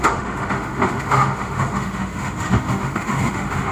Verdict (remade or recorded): remade